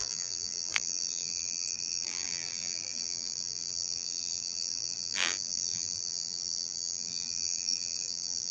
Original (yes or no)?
no